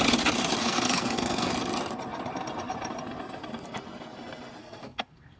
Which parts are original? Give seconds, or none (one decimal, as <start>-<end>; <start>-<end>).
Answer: 0.0-0.6; 1.5-4.6